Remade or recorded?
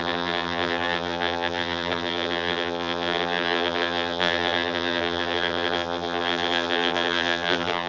remade